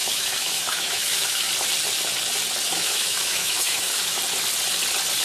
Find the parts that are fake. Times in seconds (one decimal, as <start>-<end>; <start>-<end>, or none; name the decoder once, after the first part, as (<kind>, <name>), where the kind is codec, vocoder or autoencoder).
0.0-1.5 (autoencoder, DAC-VAE); 2.7-4.2